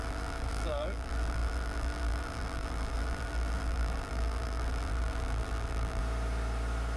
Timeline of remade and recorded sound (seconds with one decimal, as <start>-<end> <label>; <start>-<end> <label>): 0.0-6.0 remade; 6.0-7.0 recorded